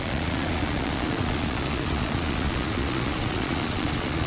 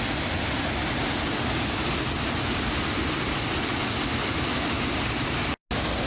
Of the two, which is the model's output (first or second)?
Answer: first